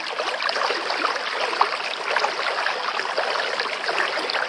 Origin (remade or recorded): recorded